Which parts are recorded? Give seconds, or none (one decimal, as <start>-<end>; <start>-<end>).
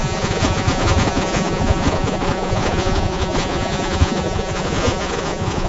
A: none